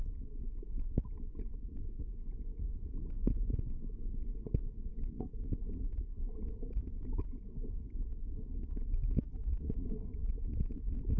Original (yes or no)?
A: yes